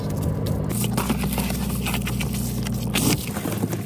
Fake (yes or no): no